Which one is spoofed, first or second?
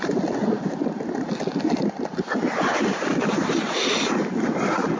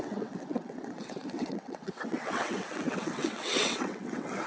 second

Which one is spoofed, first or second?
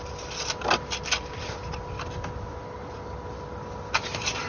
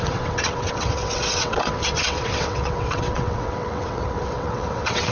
second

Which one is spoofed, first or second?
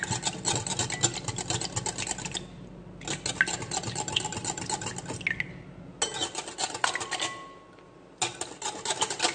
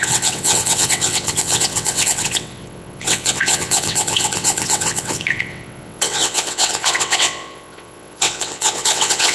second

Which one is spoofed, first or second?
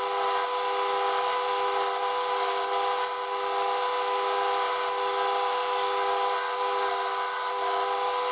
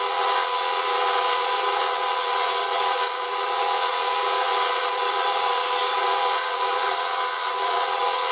second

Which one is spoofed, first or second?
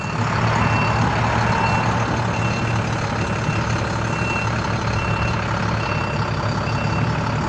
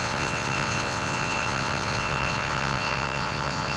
second